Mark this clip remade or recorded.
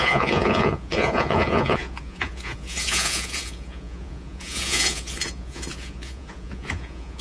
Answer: remade